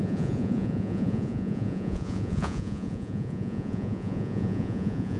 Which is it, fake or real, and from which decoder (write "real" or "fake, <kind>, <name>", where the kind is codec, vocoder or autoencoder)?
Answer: fake, vocoder, Vocos